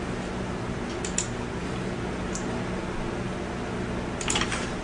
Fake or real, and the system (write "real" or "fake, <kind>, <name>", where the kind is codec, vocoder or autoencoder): real